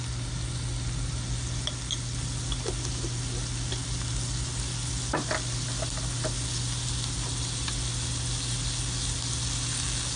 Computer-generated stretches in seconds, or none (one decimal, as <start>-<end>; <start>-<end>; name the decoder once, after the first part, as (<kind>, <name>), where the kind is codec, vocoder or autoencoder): none